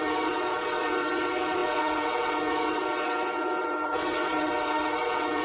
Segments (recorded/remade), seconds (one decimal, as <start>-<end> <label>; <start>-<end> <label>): 0.0-5.4 remade